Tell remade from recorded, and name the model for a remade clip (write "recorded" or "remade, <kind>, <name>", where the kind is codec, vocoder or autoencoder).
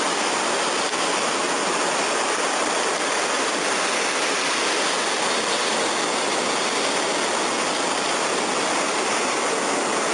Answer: recorded